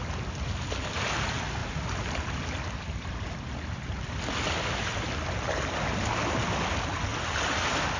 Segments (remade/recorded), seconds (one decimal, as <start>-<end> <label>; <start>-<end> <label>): 0.0-8.0 recorded